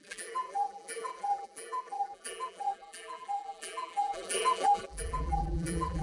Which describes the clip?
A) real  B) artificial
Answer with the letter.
B